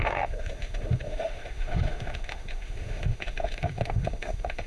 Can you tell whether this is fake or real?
fake